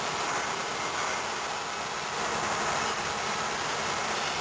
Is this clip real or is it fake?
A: real